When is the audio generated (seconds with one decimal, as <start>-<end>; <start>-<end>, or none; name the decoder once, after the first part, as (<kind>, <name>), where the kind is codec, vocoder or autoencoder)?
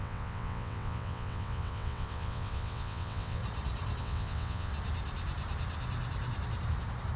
0.0-3.4 (vocoder, WaveNeXt); 4.0-4.7